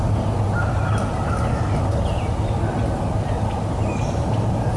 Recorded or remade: recorded